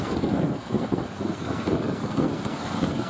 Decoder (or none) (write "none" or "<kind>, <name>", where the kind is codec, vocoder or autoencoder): codec, SNAC